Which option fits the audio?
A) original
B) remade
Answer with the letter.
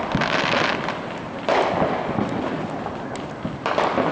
A